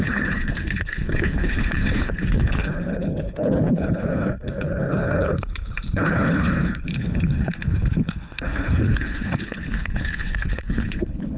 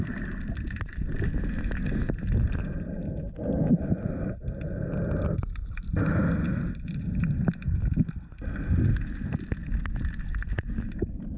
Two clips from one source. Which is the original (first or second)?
second